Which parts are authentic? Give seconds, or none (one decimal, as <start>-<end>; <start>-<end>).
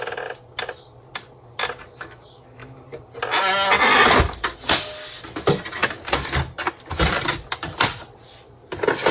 0.0-9.1